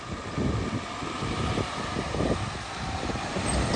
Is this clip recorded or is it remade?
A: recorded